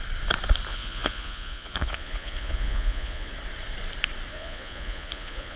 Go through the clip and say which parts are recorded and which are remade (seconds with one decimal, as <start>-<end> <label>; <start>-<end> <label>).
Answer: 0.0-0.7 recorded; 0.7-3.3 remade; 3.3-4.3 recorded; 4.3-5.6 remade